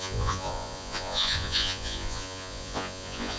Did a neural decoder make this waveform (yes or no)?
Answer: yes